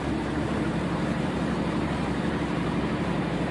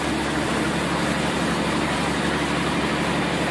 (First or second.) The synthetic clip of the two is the first